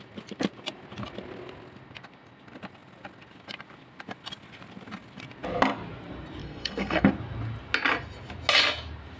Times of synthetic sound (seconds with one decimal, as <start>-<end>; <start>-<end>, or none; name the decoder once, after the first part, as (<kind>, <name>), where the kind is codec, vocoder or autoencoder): 6.4-7.1 (codec, SNAC)